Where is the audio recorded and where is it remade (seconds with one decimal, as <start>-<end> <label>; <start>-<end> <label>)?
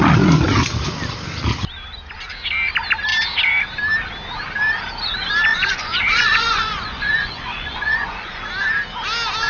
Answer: 0.0-5.5 recorded; 5.5-8.4 remade; 8.4-9.5 recorded